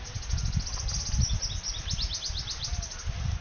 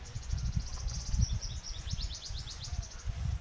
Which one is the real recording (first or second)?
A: first